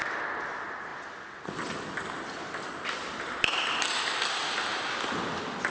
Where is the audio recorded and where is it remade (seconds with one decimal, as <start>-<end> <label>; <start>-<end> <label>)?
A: 0.0-5.7 recorded